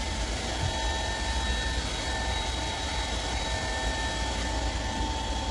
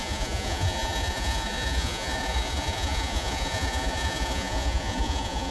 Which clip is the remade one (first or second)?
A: second